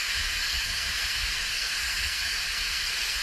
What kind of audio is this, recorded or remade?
remade